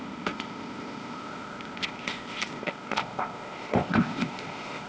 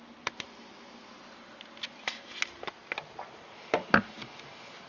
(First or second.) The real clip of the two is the second